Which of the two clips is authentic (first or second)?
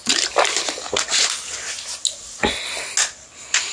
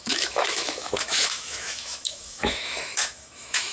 first